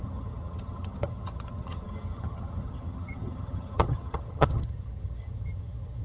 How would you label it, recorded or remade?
remade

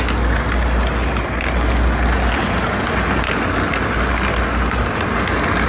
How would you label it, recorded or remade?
recorded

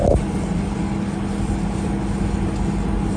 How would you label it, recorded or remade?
recorded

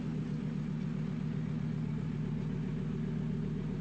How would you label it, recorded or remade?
recorded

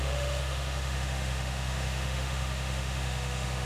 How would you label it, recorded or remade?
remade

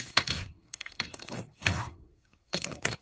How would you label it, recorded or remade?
remade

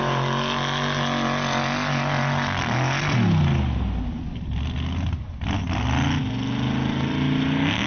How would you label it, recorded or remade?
recorded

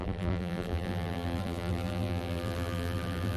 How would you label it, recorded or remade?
remade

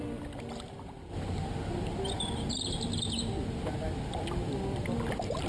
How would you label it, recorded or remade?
recorded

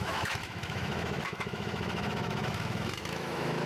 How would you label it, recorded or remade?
remade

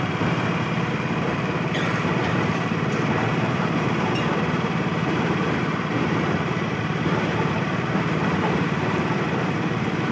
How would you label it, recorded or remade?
remade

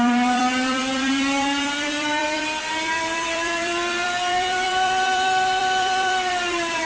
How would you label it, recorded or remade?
remade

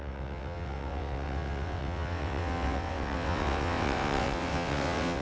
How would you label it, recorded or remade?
remade